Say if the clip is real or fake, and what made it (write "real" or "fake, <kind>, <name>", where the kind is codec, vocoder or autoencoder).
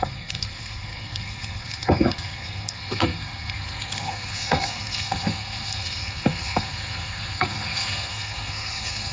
fake, codec, SNAC